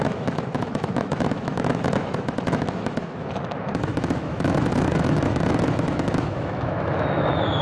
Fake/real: fake